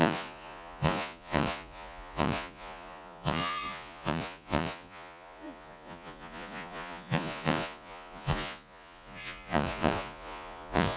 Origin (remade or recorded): remade